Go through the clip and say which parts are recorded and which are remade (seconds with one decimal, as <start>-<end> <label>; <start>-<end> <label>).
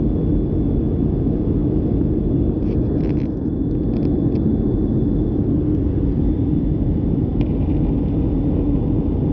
0.0-1.6 recorded; 1.6-2.2 remade; 2.2-9.3 recorded